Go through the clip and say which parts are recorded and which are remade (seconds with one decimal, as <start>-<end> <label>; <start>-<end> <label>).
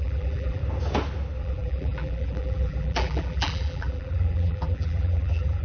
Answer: 0.0-0.6 remade; 0.6-1.4 recorded; 1.4-5.6 remade